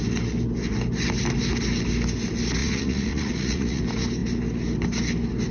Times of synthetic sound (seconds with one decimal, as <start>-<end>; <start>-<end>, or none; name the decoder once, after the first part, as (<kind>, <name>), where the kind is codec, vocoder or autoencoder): 2.6-3.8 (vocoder, Vocos)